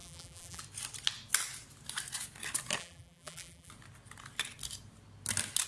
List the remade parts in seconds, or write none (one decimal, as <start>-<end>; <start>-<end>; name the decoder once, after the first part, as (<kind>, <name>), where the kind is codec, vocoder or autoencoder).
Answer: 0.0-0.6 (vocoder, BigVGAN v2); 2.8-3.7